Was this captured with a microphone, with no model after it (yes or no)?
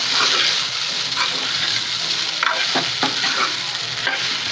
yes